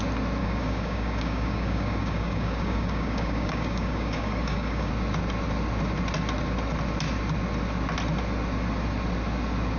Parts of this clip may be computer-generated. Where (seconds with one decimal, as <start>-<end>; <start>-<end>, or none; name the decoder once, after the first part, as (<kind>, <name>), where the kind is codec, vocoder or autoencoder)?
0.4-4.9 (codec, DAC)